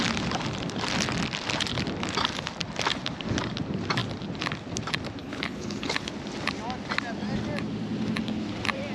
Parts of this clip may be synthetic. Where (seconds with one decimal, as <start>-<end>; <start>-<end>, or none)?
5.2-6.1